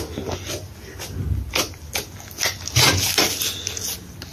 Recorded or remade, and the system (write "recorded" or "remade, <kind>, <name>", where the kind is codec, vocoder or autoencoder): recorded